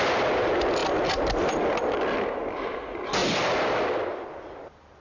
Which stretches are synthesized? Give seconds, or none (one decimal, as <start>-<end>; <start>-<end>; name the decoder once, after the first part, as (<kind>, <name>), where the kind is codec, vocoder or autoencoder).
none